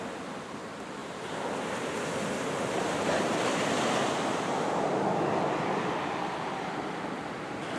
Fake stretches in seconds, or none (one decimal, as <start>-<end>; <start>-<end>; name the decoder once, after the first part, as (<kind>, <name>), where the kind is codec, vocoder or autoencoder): none